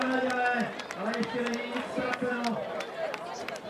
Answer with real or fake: real